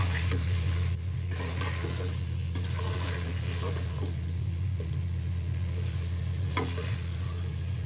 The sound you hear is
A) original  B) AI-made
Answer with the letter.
B